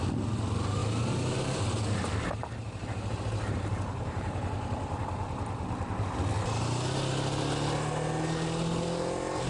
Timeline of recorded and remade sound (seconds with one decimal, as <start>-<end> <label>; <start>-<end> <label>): 0.0-2.8 recorded; 2.8-4.4 remade; 4.4-9.5 recorded

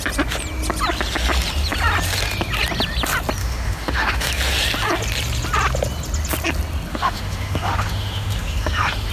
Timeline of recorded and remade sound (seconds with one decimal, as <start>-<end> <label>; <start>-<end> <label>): 0.0-3.4 recorded; 3.4-4.3 remade; 4.3-6.9 recorded; 6.9-9.1 remade

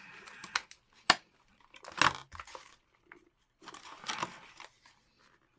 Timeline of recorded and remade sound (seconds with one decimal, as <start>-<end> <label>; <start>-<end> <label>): 0.0-5.6 recorded

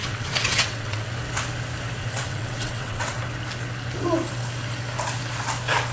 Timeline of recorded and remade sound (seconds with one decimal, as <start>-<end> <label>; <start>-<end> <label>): 0.0-1.1 remade; 1.1-2.0 recorded; 2.0-3.2 remade; 3.2-5.9 recorded

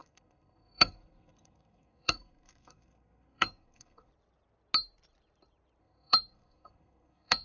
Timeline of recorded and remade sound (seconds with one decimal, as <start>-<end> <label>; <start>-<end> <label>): 0.0-4.1 remade; 4.1-5.8 recorded; 5.8-7.4 remade

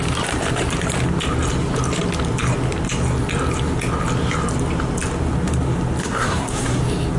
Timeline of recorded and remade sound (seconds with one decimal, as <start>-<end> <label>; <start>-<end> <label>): 0.0-6.0 recorded; 6.0-6.8 remade; 6.8-7.2 recorded

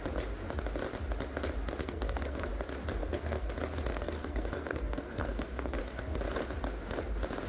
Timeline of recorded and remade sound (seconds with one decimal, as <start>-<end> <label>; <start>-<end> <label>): 0.0-1.8 recorded; 1.8-2.5 remade; 2.5-3.0 recorded; 3.0-3.5 remade; 3.5-3.9 recorded; 3.9-5.8 remade; 5.8-7.5 recorded